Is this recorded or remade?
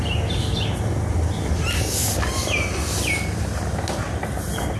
recorded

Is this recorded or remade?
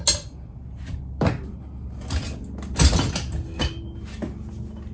recorded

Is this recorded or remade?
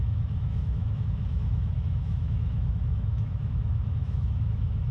remade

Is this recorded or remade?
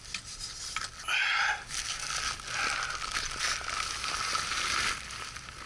recorded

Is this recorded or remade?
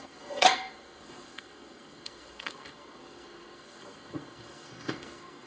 remade